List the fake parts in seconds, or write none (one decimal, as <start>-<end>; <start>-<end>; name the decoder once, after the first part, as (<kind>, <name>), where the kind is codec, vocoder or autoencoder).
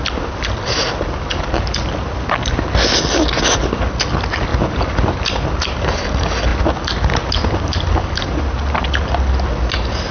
none